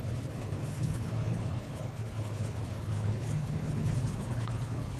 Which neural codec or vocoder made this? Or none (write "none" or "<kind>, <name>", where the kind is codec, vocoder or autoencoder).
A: codec, HILCodec